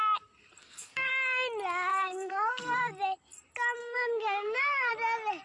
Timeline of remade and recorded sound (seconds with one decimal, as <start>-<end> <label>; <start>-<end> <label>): 0.0-0.6 recorded; 0.6-1.1 remade; 1.1-1.9 recorded; 1.9-2.9 remade; 2.9-3.8 recorded; 3.8-4.9 remade; 4.9-5.4 recorded